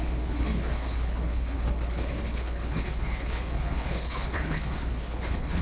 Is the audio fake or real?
fake